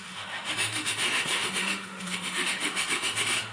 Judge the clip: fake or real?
fake